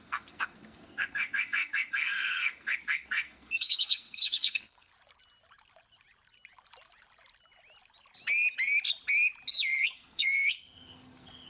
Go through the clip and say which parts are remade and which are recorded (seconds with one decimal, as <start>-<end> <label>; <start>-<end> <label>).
0.0-4.9 remade; 4.9-9.8 recorded; 9.8-11.5 remade